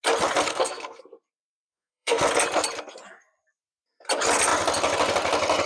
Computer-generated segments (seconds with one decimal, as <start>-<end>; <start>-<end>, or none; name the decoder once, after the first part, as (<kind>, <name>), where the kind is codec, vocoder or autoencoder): 0.5-1.0 (codec, SNAC); 1.5-2.2